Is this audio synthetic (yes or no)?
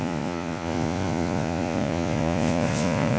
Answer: yes